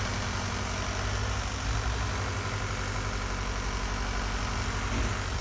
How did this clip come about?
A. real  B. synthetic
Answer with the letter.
A